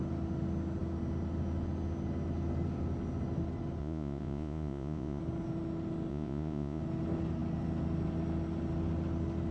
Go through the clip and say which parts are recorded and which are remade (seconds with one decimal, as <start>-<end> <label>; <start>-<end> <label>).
0.0-3.8 recorded; 3.8-5.2 remade; 5.2-6.1 recorded; 6.1-6.8 remade; 6.8-9.5 recorded